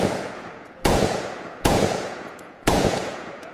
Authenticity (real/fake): fake